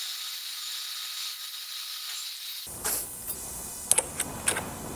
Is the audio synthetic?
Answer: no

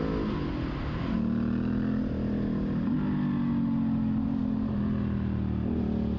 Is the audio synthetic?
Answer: no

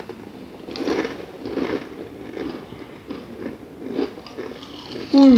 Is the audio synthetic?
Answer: no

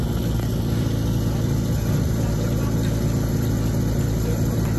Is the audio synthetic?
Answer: no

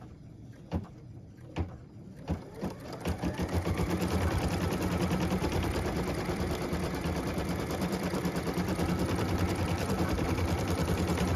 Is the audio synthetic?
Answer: yes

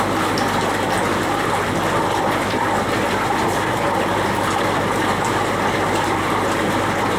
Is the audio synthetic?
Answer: no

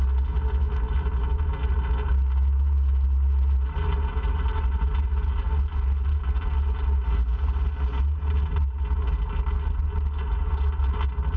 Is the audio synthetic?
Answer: no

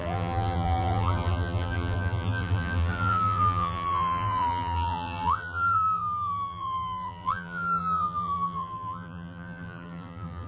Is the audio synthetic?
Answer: yes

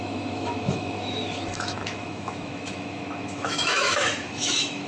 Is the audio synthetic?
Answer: yes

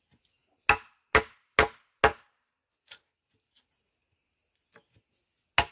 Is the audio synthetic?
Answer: no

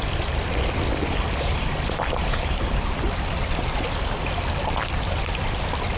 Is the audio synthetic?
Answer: no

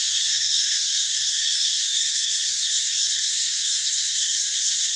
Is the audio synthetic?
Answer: yes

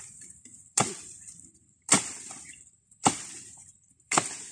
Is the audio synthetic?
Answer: yes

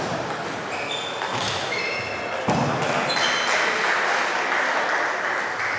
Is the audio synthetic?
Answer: no